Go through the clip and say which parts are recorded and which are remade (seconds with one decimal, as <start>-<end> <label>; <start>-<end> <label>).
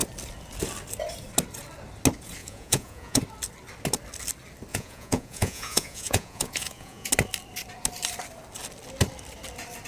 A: 0.0-2.4 recorded; 2.4-3.2 remade; 3.2-4.7 recorded; 4.7-7.1 remade; 7.1-9.9 recorded